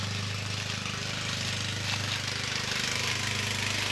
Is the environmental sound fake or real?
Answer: real